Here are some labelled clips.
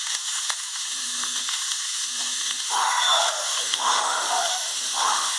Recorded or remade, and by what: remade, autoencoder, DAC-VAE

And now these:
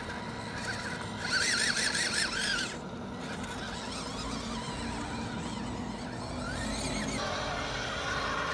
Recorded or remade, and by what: recorded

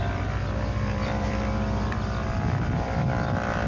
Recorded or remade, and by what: remade, vocoder, BigVGAN v2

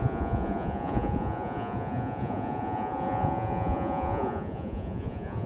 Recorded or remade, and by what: remade, vocoder, Vocos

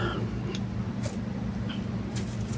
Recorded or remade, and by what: recorded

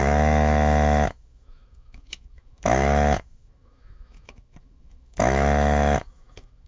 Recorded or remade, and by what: remade, autoencoder, DAC-VAE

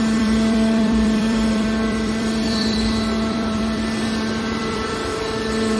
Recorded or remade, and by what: remade, vocoder, BigVGAN v2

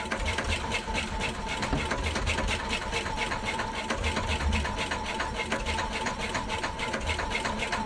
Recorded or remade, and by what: remade, vocoder, BigVGAN v2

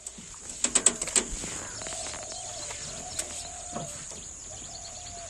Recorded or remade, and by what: recorded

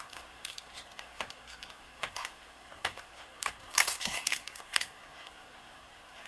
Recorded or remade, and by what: remade, codec, SNAC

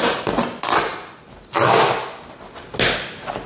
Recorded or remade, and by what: recorded